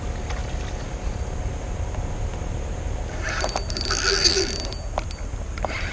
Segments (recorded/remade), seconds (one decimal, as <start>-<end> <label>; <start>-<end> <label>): 0.0-5.9 recorded